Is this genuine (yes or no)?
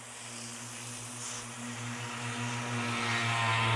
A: yes